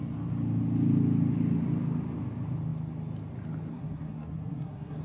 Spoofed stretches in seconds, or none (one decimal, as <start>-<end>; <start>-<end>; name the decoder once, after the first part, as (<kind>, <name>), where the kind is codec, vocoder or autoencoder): 3.7-5.0 (codec, SNAC)